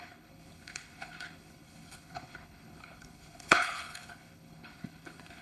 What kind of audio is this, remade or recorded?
remade